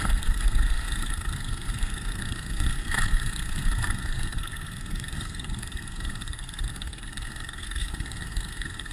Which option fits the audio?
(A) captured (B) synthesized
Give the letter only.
B